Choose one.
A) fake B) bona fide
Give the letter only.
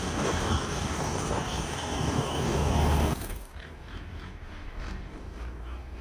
A